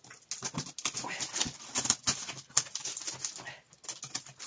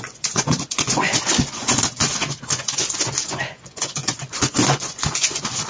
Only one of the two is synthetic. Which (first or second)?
second